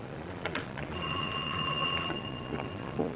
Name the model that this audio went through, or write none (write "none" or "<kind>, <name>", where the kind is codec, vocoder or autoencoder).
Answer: vocoder, Vocos